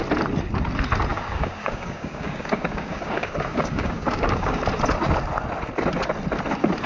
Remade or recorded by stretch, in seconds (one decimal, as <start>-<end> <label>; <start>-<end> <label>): 0.0-1.1 recorded; 1.1-4.6 remade; 4.6-6.9 recorded